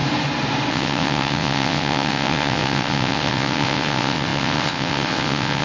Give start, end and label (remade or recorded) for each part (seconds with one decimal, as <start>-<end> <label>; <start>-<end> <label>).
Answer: 0.0-0.7 recorded; 0.7-5.6 remade